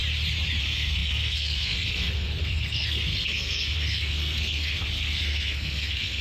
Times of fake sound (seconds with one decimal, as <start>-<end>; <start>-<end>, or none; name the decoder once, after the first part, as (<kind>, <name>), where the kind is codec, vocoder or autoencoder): 0.6-6.2 (codec, SNAC)